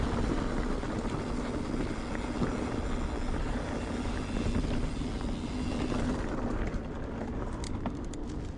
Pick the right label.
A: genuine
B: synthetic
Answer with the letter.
A